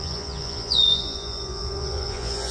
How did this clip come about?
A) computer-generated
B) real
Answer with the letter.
A